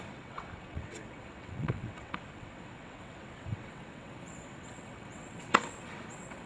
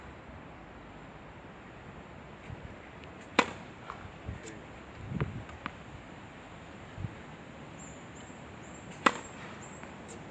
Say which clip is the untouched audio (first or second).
second